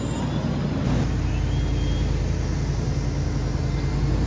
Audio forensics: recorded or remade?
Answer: recorded